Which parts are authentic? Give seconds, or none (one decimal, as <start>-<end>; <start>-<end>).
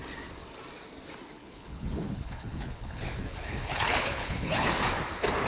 0.0-1.4; 4.7-5.5